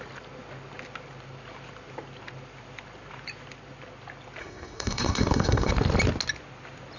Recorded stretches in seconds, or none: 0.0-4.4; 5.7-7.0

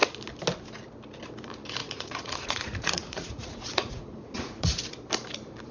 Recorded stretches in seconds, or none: 0.0-1.8; 4.8-5.7

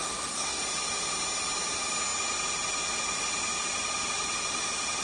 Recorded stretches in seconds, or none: 0.6-5.0

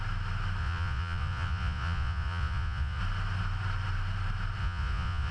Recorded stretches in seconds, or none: 0.0-0.6; 3.0-4.6

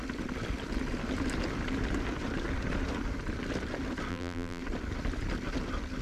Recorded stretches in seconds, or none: 0.0-4.1; 4.6-6.0

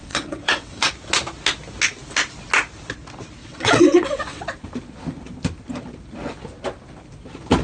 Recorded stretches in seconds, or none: 0.9-3.4; 4.4-7.6

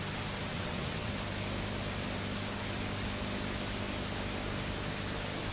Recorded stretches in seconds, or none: 0.0-0.5; 1.1-5.5

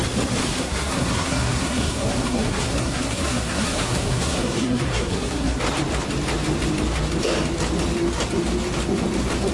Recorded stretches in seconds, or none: 0.0-0.4; 5.6-9.5